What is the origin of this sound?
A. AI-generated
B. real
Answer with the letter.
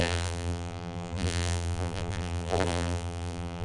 A